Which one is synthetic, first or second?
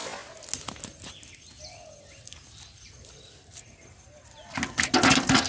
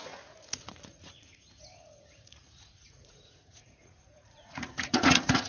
second